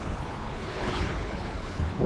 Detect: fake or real fake